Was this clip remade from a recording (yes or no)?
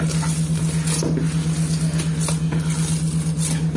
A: no